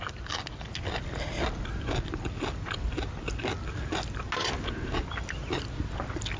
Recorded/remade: recorded